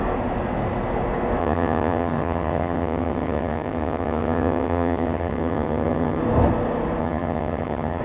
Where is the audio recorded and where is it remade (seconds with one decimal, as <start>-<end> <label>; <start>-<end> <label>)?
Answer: 0.0-1.4 recorded; 1.4-6.2 remade; 6.2-7.0 recorded; 7.0-8.0 remade